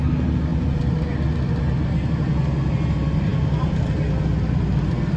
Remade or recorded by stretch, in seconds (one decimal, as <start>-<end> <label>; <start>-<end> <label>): 0.0-5.2 recorded